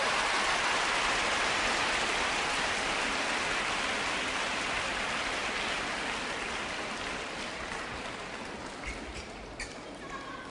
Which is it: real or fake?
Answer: real